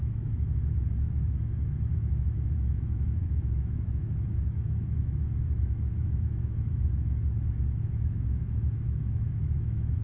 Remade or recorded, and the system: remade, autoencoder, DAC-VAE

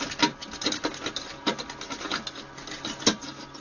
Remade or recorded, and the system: recorded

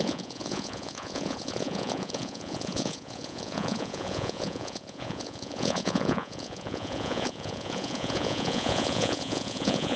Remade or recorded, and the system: remade, vocoder, Vocos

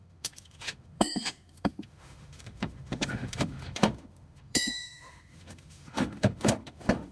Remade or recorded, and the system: remade, autoencoder, DAC-VAE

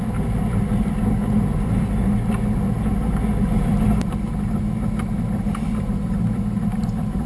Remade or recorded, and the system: recorded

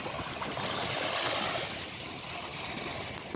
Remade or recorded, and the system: remade, vocoder, BigVGAN v2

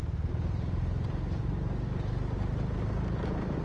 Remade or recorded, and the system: remade, vocoder, BigVGAN v2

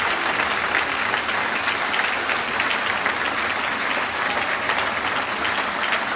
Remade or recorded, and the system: recorded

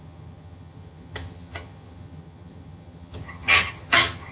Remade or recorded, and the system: remade, vocoder, HiFi-GAN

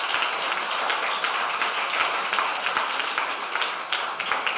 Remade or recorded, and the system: recorded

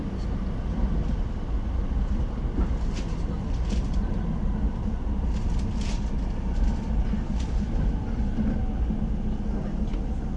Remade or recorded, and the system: recorded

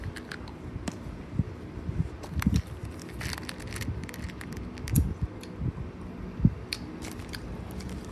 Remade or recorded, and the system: recorded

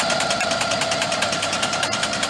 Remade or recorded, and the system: remade, vocoder, BigVGAN v2